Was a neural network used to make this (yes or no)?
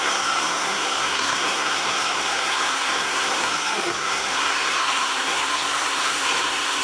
yes